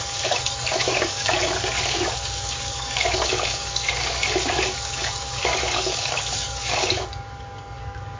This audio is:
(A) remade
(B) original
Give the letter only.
A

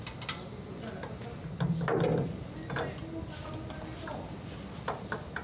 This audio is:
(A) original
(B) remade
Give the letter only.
A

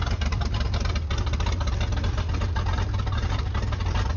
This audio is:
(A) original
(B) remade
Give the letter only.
A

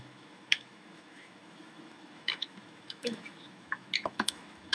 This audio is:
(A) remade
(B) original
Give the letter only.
A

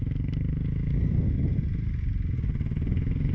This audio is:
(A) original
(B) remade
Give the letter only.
A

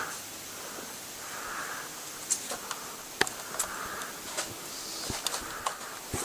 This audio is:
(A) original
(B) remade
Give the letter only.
A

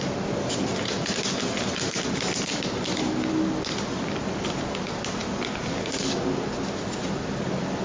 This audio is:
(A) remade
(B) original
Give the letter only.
B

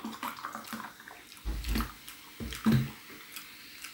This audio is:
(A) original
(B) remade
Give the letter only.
A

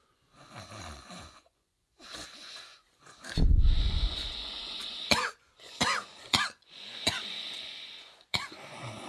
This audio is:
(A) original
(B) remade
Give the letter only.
B